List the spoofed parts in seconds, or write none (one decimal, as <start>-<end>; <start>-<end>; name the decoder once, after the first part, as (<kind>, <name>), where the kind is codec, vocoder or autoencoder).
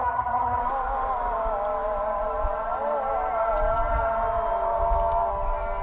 0.0-0.6 (vocoder, HiFi-GAN)